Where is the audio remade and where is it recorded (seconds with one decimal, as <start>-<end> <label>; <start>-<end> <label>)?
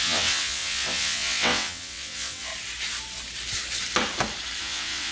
0.0-2.5 remade; 2.5-4.6 recorded; 4.6-5.1 remade